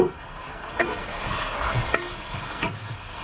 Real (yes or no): no